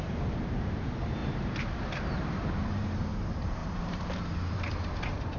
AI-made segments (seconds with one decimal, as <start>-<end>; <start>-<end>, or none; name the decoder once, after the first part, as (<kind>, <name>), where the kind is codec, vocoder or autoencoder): 0.0-5.4 (vocoder, BigVGAN v2)